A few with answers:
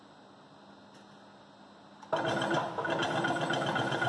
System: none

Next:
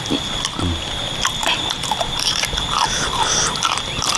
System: none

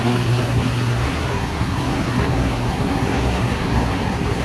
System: codec, SNAC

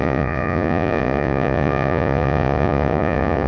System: vocoder, Vocos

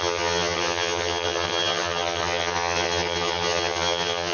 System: vocoder, HiFi-GAN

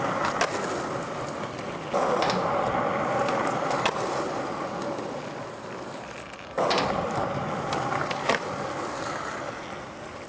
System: none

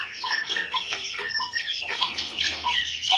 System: codec, SNAC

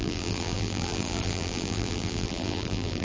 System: vocoder, BigVGAN v2